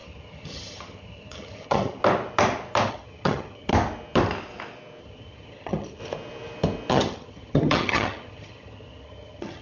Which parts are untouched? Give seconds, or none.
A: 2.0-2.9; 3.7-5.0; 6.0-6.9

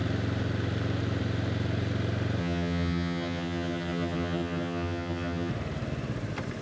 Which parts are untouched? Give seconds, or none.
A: 0.0-2.4; 5.5-6.6

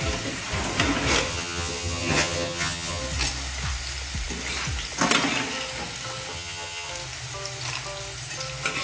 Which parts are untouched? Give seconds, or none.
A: 0.0-1.3; 3.0-6.3; 6.9-8.8